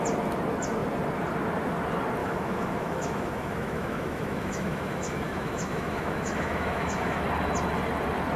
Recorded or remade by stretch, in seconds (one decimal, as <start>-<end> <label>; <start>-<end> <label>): 0.0-2.2 recorded; 2.2-7.2 remade; 7.2-8.4 recorded